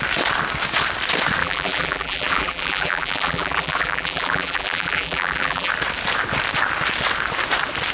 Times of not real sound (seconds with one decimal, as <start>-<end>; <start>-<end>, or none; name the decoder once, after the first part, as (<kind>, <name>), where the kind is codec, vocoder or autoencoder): 1.4-5.7 (vocoder, BigVGAN v2)